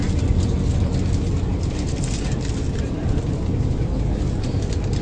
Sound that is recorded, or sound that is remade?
recorded